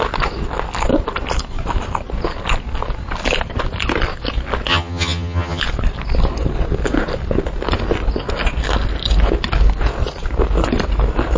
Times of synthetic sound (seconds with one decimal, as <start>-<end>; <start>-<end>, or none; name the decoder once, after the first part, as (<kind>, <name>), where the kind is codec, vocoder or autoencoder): 4.7-5.6 (vocoder, HiFi-GAN)